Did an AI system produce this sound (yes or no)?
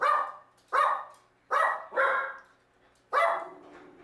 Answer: no